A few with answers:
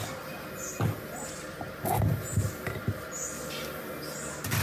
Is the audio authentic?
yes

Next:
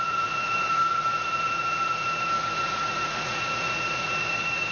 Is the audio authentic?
no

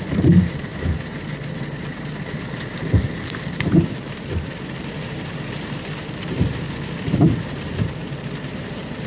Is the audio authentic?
no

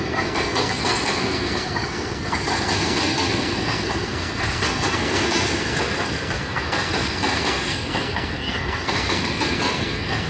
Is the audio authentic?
no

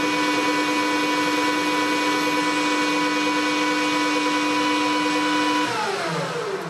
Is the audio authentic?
yes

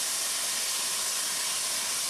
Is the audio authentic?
yes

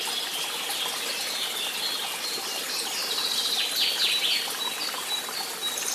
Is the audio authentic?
yes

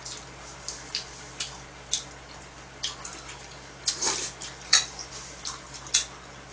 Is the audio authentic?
yes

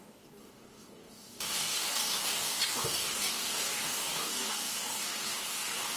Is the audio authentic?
no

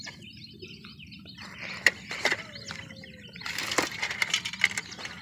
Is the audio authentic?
yes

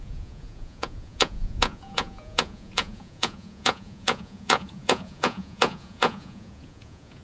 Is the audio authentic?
no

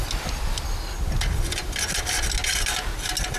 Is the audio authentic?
yes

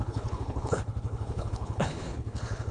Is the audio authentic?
no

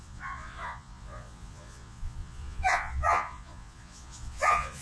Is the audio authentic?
no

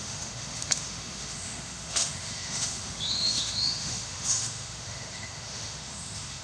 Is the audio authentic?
no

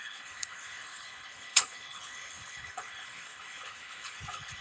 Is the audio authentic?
no